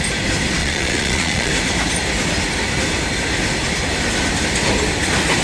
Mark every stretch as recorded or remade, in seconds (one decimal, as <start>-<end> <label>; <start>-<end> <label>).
0.0-0.6 recorded; 0.6-1.5 remade; 1.5-5.4 recorded